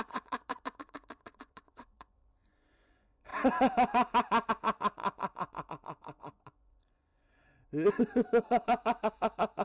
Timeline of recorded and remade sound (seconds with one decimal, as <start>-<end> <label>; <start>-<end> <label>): 0.0-3.3 remade; 3.3-4.5 recorded; 4.5-9.6 remade